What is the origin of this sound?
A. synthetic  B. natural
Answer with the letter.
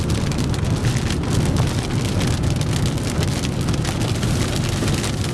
B